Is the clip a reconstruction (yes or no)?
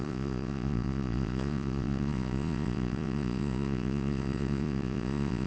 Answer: yes